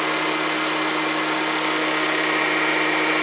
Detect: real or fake real